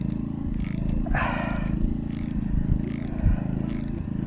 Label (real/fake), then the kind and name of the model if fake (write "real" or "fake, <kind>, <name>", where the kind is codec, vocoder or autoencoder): real